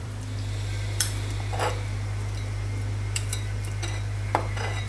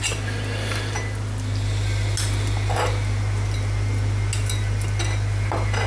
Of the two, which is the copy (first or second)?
first